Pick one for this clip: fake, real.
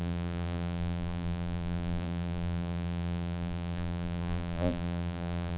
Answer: fake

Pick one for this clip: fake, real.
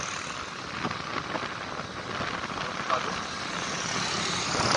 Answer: real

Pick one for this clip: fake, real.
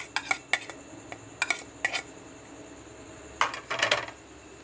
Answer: real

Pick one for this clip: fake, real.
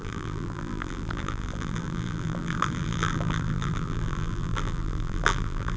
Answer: fake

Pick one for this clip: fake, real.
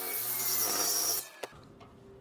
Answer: real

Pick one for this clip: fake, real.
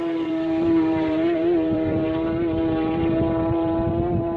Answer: fake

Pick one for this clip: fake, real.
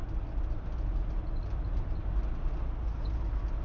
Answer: real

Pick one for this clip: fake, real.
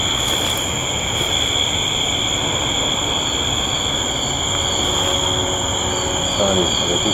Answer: real